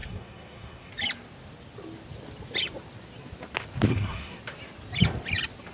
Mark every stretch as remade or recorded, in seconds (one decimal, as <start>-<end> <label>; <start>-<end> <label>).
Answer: 0.0-0.9 remade; 0.9-3.9 recorded; 3.9-4.4 remade; 4.4-5.7 recorded